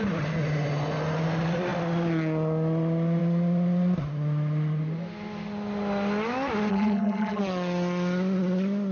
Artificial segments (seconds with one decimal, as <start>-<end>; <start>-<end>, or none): 6.7-7.4